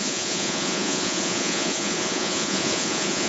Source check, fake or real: fake